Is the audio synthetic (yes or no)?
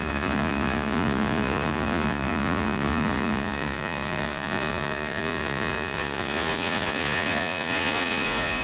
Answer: yes